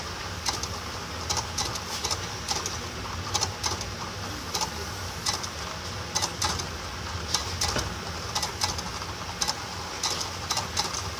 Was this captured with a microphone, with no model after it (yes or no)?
yes